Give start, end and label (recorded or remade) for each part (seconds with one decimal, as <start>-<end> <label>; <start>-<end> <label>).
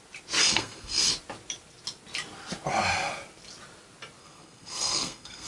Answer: 0.0-0.4 recorded; 0.4-1.1 remade; 1.1-4.2 recorded; 4.2-5.5 remade